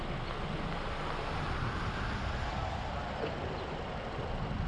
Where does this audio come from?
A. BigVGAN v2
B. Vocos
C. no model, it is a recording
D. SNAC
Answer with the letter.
C